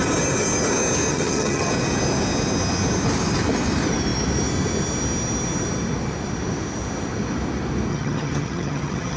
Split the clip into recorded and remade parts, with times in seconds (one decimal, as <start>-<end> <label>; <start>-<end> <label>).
0.0-1.1 recorded; 1.1-1.7 remade; 1.7-7.9 recorded; 7.9-9.2 remade